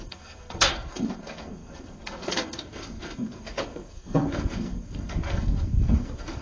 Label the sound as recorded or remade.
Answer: remade